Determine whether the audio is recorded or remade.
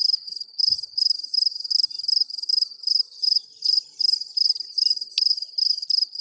recorded